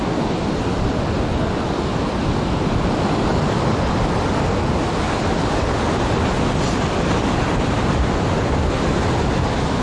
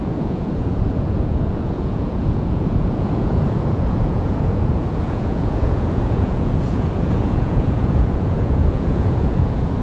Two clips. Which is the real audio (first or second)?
first